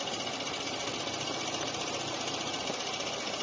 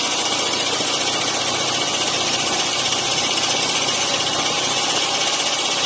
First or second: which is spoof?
second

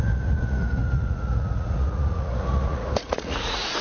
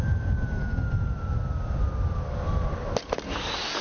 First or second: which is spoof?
first